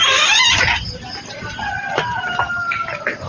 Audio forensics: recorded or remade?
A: recorded